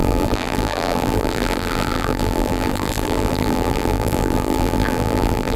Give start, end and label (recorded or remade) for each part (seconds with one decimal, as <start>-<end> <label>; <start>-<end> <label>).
0.0-5.6 remade